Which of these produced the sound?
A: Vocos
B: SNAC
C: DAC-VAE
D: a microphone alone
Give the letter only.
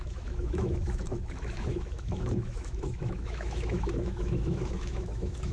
C